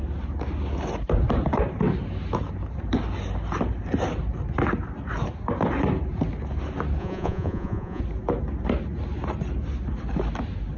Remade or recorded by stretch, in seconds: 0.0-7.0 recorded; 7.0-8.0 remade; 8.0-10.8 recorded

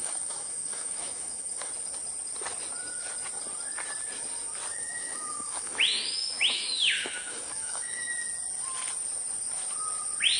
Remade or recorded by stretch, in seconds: 0.0-1.7 remade; 1.7-4.7 recorded; 4.7-8.1 remade; 8.1-10.4 recorded

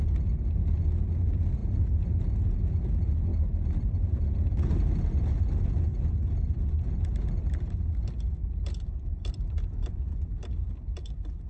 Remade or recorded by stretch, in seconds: 0.0-3.3 recorded; 3.3-4.1 remade; 4.1-8.4 recorded; 8.4-10.5 remade; 10.5-11.5 recorded

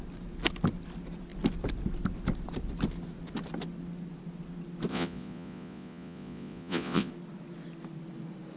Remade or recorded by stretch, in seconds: 0.0-4.9 recorded; 4.9-7.1 remade; 7.1-8.6 recorded